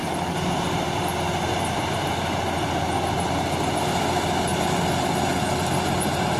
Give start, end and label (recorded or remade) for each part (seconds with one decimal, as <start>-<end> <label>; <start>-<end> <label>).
0.0-1.0 remade; 1.0-1.5 recorded; 1.5-2.1 remade; 2.1-6.4 recorded